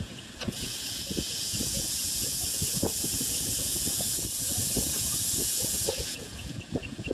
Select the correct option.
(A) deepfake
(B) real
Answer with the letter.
A